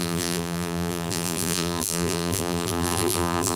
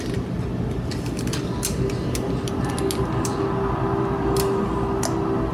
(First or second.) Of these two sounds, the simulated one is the first